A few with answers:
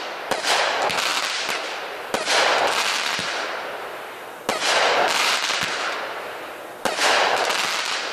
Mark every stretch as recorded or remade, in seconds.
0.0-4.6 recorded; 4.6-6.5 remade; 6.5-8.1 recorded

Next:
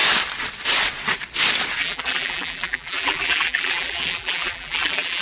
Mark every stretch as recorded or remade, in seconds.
0.0-1.8 recorded; 1.8-5.2 remade

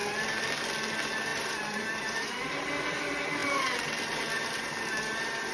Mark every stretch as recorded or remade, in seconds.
0.0-1.3 recorded; 1.3-2.4 remade; 2.4-5.5 recorded

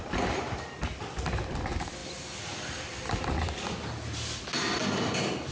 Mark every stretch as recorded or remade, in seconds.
0.0-5.5 recorded